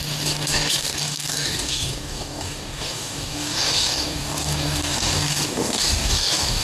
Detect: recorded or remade remade